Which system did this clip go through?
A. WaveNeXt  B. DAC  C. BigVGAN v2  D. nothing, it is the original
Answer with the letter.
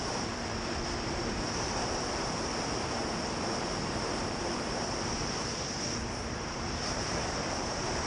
C